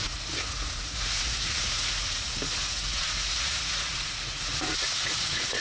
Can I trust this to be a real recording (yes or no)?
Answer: no